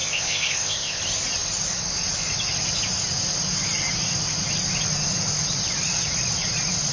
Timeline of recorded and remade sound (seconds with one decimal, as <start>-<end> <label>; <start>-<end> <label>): 0.0-1.0 remade; 1.0-6.9 recorded